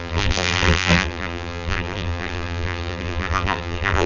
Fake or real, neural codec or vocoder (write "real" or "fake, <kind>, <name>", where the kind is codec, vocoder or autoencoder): fake, vocoder, BigVGAN v2